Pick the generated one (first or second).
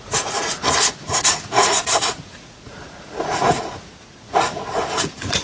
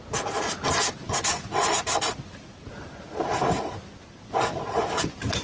first